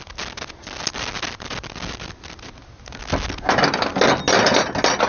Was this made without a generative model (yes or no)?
yes